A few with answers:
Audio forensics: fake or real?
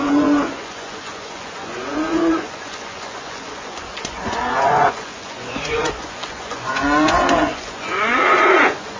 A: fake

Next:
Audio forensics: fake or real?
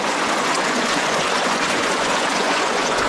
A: fake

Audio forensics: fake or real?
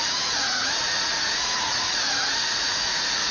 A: fake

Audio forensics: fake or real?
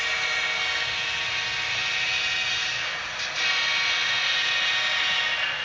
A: real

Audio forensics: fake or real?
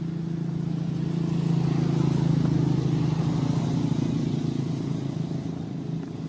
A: real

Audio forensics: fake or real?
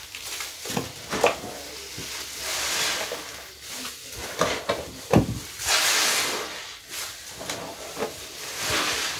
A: real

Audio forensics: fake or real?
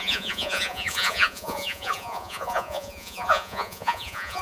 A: fake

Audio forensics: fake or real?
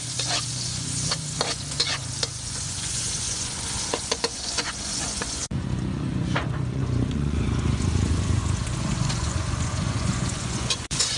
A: fake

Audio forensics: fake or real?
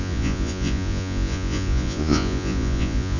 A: fake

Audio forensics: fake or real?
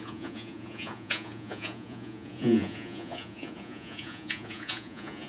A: fake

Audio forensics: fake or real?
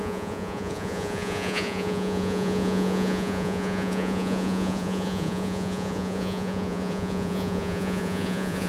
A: fake